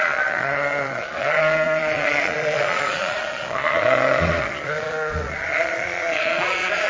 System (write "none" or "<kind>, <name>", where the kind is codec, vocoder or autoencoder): vocoder, Vocos